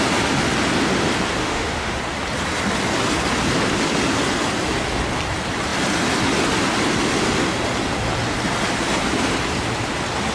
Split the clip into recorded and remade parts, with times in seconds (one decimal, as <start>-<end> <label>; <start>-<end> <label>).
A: 0.0-1.4 recorded; 1.4-2.0 remade; 2.0-10.3 recorded